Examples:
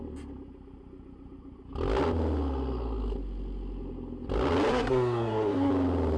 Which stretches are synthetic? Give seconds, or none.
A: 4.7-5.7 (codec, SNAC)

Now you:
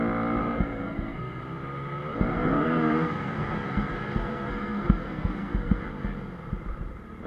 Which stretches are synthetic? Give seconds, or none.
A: 0.4-1.4 (codec, SNAC); 2.3-5.8

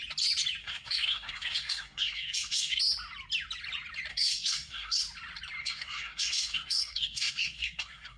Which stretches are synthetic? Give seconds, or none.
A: 0.6-2.8 (codec, SNAC); 4.1-5.0; 5.6-8.2

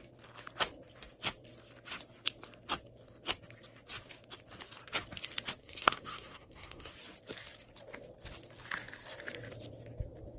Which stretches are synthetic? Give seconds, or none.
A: 5.6-6.9 (codec, SNAC)

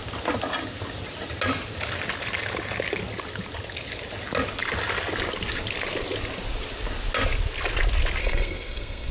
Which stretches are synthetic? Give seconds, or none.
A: 8.2-9.1 (codec, SNAC)

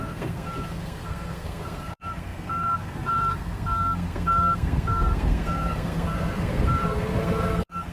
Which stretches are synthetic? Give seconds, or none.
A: 0.0-7.9 (codec, SNAC)